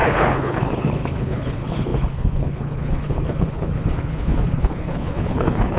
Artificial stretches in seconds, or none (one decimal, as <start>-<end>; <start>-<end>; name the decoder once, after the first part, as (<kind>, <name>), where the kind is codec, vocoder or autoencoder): 0.0-5.8 (codec, HILCodec)